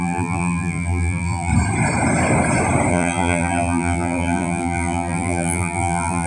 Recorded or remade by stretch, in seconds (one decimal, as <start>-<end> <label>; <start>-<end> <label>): 0.0-1.5 remade; 1.5-2.9 recorded; 2.9-6.3 remade